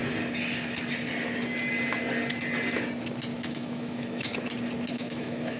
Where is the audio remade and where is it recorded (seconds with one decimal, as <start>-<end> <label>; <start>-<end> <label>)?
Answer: 0.0-3.4 recorded; 3.4-4.3 remade; 4.3-4.9 recorded; 4.9-5.6 remade